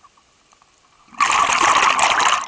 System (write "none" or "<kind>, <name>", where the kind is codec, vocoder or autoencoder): none